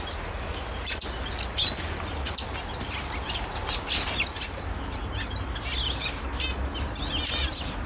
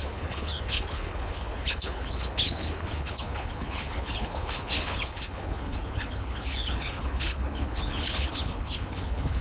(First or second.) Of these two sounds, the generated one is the second